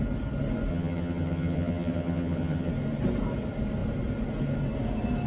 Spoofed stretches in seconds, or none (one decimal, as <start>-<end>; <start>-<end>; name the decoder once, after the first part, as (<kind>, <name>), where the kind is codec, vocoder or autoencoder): 0.7-2.7 (vocoder, HiFi-GAN)